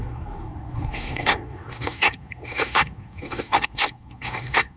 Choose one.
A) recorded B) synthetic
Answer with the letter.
B